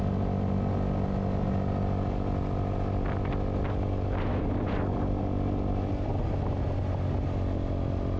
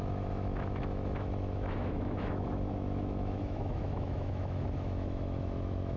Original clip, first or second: first